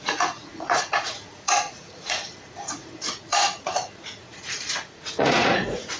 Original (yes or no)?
no